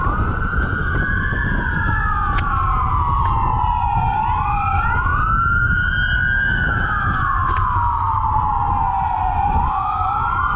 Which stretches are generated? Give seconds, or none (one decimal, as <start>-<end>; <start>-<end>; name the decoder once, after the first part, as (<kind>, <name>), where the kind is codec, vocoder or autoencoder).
0.0-2.6 (vocoder, Vocos); 3.2-5.1; 7.0-10.6

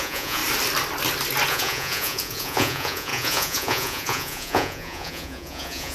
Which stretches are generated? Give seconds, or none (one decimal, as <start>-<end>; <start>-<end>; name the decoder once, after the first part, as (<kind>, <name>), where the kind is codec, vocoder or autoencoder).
0.0-0.4 (vocoder, Vocos); 1.5-5.9

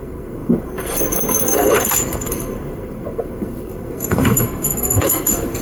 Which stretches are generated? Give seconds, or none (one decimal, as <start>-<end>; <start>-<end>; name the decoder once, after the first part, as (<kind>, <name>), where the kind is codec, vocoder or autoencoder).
0.0-5.6 (codec, SNAC)

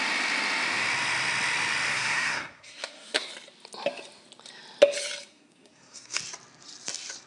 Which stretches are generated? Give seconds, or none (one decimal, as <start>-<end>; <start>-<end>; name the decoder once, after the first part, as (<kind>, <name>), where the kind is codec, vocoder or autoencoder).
1.9-3.3 (codec, SNAC); 5.3-6.2

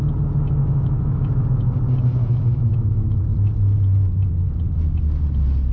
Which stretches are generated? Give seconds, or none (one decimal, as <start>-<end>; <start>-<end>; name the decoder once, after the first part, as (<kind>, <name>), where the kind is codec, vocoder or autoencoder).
0.6-1.4 (autoencoder, DAC-VAE); 2.2-3.2

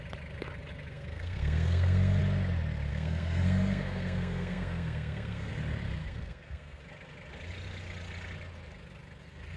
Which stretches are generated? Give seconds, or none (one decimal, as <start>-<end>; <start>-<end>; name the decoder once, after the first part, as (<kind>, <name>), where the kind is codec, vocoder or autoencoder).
0.9-2.2 (codec, SNAC); 2.9-5.5; 6.0-6.8

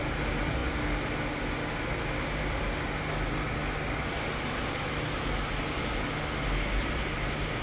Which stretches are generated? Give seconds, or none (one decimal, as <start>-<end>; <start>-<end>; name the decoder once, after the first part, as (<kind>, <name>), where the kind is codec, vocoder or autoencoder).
none

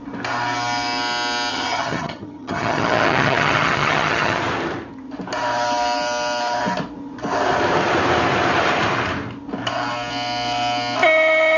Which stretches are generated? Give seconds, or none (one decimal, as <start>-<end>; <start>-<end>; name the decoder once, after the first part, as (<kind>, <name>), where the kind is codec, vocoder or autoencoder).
1.5-4.4 (vocoder, HiFi-GAN)